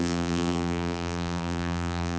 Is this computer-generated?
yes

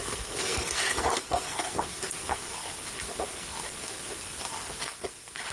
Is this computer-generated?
yes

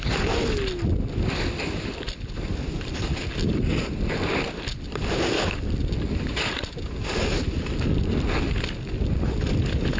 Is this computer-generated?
no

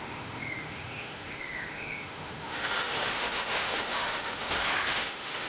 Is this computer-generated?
yes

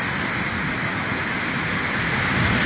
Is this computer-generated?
no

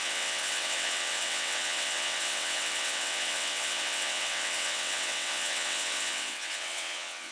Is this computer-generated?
yes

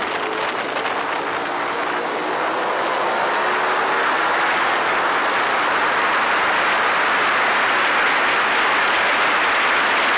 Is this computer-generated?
no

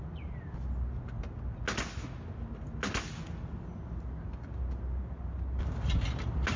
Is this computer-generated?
no